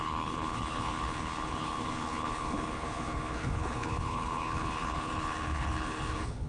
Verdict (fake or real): fake